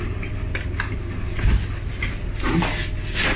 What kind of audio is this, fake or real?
real